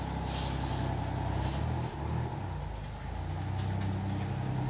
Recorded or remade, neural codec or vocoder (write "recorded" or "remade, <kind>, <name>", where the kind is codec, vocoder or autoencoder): recorded